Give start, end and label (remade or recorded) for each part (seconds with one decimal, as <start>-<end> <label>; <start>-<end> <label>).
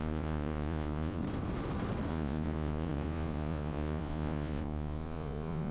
0.0-1.2 remade; 1.2-2.1 recorded; 2.1-5.7 remade